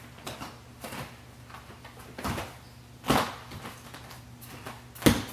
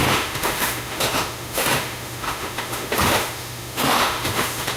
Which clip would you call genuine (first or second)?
first